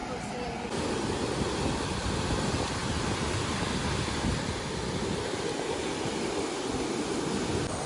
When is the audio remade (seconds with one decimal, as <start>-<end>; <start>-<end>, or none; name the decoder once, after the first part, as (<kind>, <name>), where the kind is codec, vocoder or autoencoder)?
none